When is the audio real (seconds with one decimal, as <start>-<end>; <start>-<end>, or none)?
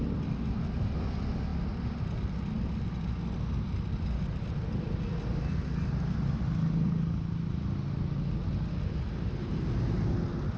0.0-10.6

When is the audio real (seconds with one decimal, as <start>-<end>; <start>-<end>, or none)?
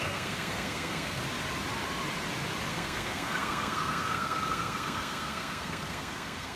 1.2-2.7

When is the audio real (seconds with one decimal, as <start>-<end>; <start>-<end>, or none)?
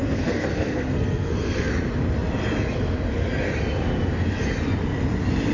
1.7-5.5